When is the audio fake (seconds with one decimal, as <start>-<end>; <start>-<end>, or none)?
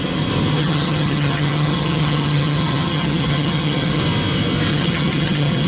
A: 0.6-4.0; 4.7-5.7